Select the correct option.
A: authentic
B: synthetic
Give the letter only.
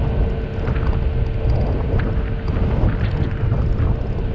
A